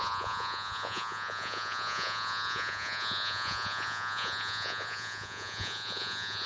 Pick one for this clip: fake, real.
fake